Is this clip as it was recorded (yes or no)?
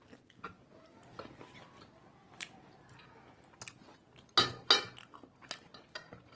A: yes